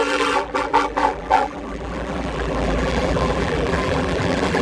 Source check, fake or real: fake